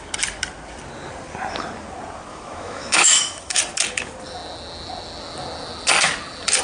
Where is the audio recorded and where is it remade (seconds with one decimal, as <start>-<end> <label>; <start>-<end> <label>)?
0.0-2.3 recorded; 2.3-3.6 remade; 3.6-6.6 recorded